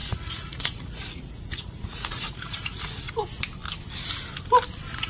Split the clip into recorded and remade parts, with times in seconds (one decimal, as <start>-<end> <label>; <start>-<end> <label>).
0.0-3.1 remade; 3.1-5.1 recorded